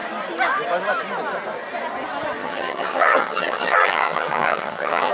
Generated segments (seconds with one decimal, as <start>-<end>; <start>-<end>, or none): 2.4-5.1